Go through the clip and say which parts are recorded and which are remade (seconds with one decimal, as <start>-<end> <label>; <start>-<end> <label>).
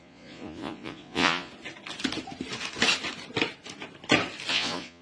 0.0-1.5 remade; 1.5-4.5 recorded; 4.5-5.0 remade